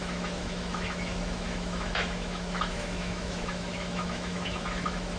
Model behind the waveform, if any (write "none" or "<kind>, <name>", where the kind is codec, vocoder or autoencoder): autoencoder, DAC-VAE